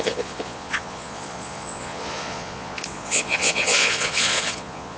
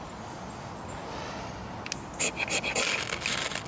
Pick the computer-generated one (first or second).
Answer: first